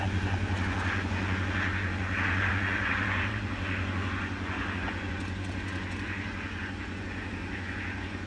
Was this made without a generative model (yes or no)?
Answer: no